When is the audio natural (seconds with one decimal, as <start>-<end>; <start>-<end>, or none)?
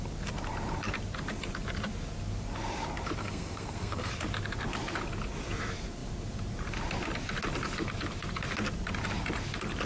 0.0-3.2; 4.1-9.9